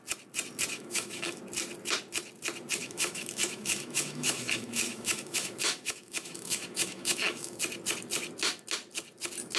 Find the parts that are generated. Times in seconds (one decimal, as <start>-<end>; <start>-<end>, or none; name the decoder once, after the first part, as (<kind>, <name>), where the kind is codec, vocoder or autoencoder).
0.7-1.4 (autoencoder, DAC-VAE); 2.8-7.6

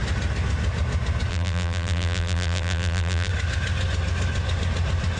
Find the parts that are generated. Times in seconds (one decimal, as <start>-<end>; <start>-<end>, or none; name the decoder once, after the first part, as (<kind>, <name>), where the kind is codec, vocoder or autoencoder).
1.3-3.3 (vocoder, BigVGAN v2)

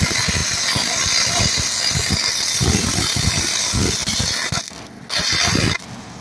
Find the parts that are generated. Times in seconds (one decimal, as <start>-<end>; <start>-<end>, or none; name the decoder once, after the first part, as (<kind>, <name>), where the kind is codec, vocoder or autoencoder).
none

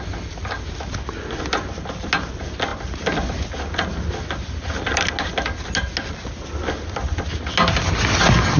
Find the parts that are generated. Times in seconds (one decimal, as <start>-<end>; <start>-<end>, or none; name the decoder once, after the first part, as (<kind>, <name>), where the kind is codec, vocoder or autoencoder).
none

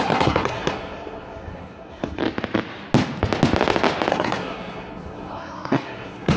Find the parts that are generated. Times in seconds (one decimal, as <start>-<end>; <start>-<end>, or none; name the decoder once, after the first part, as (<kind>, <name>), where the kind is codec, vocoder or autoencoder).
0.0-2.2 (codec, SNAC); 4.1-6.4

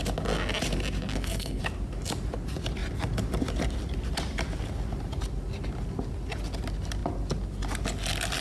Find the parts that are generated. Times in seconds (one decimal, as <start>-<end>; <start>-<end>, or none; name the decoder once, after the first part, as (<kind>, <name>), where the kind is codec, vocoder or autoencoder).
1.1-1.6 (codec, SNAC)

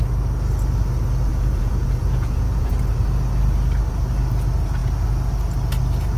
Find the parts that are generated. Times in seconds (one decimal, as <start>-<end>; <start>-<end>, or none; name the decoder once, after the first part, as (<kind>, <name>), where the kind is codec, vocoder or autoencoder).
1.3-2.7 (vocoder, Vocos)

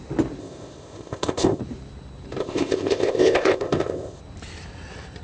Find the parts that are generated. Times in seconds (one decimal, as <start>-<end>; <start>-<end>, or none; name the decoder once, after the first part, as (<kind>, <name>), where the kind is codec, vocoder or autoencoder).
0.4-1.6 (codec, ZipCodec); 2.4-4.2